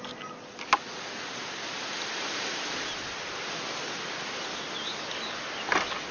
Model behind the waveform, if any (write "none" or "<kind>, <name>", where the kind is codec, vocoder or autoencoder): none